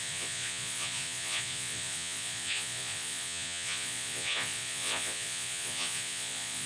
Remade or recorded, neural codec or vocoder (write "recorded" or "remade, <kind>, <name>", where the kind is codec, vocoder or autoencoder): remade, vocoder, Vocos